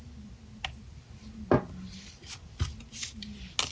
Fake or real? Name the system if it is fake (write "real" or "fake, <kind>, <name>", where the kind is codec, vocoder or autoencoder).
real